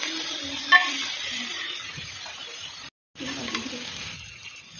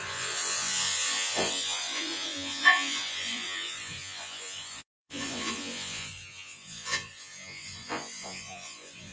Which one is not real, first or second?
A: second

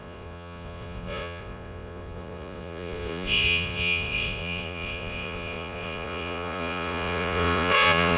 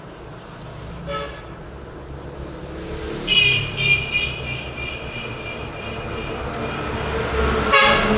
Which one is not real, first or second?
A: first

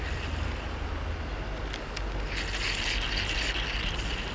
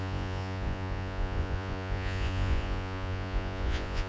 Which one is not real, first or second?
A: second